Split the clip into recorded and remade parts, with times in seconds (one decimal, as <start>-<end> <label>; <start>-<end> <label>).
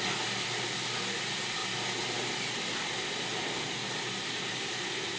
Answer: 0.0-5.2 recorded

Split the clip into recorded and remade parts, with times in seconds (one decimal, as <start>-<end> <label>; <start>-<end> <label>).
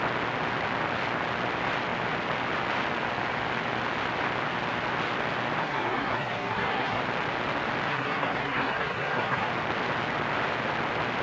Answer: 0.0-5.6 recorded; 5.6-7.0 remade; 7.0-7.9 recorded; 7.9-9.5 remade; 9.5-11.2 recorded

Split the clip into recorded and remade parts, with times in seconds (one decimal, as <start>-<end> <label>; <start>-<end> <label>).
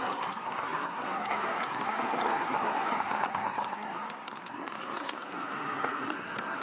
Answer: 0.0-6.6 remade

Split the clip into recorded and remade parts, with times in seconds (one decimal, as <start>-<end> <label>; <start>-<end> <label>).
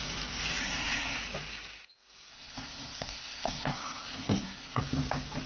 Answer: 0.0-0.6 recorded; 0.6-1.2 remade; 1.2-2.3 recorded; 2.3-4.8 remade; 4.8-5.5 recorded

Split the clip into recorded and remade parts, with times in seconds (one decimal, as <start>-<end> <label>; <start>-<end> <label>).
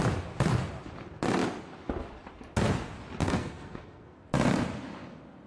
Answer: 0.0-3.2 recorded; 3.2-4.3 remade; 4.3-5.5 recorded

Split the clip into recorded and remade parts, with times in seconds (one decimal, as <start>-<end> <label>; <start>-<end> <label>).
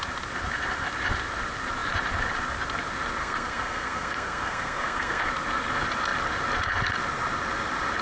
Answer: 0.0-3.2 recorded; 3.2-5.3 remade; 5.3-8.0 recorded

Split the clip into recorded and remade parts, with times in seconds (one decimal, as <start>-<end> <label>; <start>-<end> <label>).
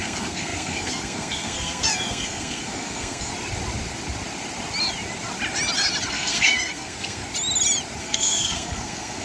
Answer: 0.0-3.3 remade; 3.3-6.1 recorded; 6.1-7.2 remade; 7.2-8.0 recorded; 8.0-9.2 remade